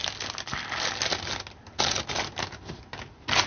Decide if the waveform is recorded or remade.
recorded